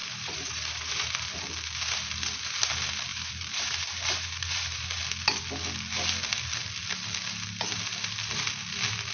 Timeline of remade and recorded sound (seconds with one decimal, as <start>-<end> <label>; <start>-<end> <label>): 0.0-1.4 remade; 1.4-3.1 recorded; 3.1-5.0 remade; 5.0-9.1 recorded